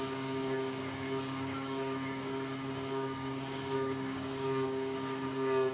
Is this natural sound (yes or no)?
no